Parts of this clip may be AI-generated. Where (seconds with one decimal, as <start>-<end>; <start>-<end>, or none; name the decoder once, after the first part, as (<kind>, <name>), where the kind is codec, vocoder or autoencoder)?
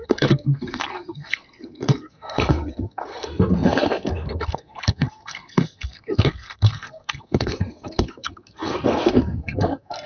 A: 0.0-10.1 (codec, SNAC)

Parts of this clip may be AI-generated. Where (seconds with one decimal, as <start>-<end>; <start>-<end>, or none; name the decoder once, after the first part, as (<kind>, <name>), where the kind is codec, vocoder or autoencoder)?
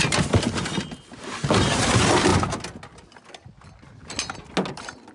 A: none